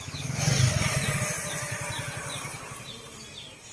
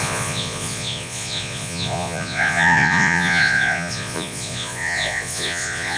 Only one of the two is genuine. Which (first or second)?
first